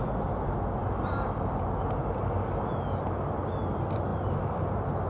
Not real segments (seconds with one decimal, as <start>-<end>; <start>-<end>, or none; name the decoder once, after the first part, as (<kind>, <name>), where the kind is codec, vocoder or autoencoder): 4.1-4.6 (vocoder, BigVGAN v2)